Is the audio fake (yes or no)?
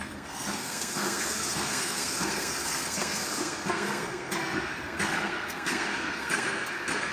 yes